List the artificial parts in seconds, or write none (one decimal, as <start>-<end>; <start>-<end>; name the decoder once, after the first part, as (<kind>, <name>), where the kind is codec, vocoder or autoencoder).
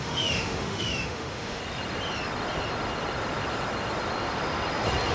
0.0-1.6 (autoencoder, DAC-VAE)